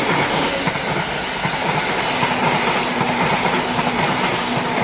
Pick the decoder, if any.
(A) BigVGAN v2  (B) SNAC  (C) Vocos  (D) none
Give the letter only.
D